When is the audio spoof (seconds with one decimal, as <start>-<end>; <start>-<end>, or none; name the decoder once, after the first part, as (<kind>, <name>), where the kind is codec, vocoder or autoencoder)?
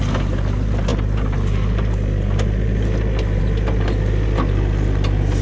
none